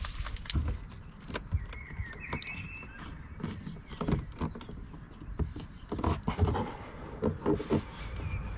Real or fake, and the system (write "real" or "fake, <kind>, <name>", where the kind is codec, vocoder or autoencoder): real